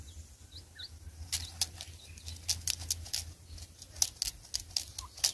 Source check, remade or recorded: recorded